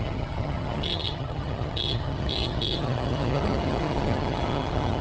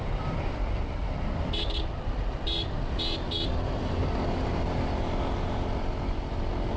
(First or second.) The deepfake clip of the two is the first